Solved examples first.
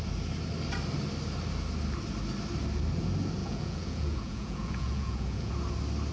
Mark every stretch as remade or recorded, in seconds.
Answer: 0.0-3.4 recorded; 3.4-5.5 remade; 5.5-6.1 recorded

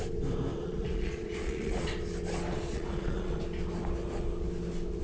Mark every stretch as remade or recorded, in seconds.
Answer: 0.0-0.5 recorded; 0.5-1.9 remade; 1.9-2.5 recorded; 2.5-3.4 remade; 3.4-5.0 recorded